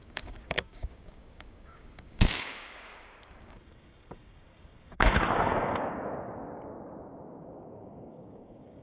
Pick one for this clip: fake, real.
fake